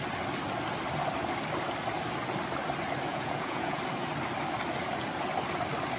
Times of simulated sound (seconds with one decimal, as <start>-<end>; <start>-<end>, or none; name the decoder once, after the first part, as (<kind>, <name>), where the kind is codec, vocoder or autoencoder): 3.1-3.8 (vocoder, Vocos)